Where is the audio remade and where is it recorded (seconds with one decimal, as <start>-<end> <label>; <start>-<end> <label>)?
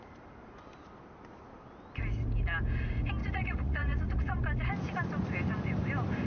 0.0-3.2 recorded; 3.2-4.4 remade; 4.4-6.3 recorded